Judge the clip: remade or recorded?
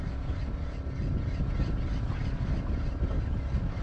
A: recorded